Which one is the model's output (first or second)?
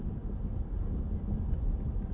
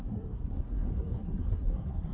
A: second